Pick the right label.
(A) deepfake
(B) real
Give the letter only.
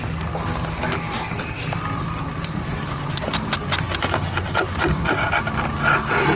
B